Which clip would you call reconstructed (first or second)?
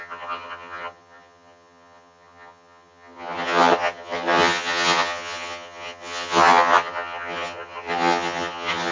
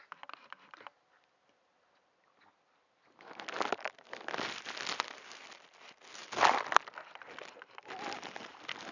first